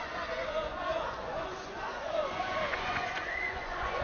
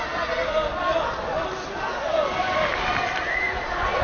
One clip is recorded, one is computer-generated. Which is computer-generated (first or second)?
first